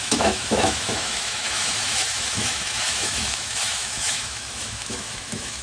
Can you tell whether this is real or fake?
fake